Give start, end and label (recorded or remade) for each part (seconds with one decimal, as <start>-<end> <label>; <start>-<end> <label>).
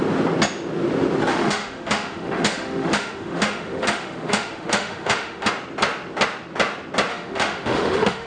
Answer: 0.0-1.3 recorded; 1.3-5.5 remade; 5.5-7.1 recorded; 7.1-8.3 remade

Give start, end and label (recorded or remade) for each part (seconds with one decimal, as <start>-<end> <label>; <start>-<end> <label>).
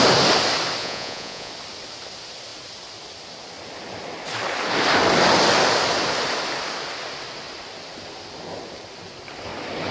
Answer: 0.0-0.8 recorded; 0.8-1.5 remade; 1.5-9.9 recorded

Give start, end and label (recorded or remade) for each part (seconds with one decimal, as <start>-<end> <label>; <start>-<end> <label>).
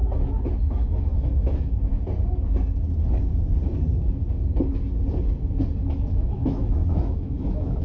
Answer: 0.0-0.6 recorded; 0.6-1.9 remade; 1.9-6.1 recorded; 6.1-7.8 remade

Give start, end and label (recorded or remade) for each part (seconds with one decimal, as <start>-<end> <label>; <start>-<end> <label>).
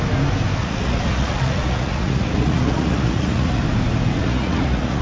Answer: 0.0-0.6 recorded; 0.6-3.6 remade; 3.6-4.2 recorded; 4.2-5.0 remade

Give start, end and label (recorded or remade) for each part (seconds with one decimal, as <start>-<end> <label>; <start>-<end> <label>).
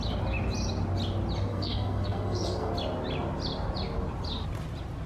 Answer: 0.0-1.5 recorded; 1.5-2.7 remade; 2.7-5.1 recorded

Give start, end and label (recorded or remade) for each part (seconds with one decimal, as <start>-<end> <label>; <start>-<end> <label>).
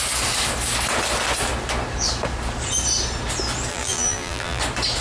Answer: 0.0-3.7 recorded; 3.7-4.6 remade; 4.6-5.0 recorded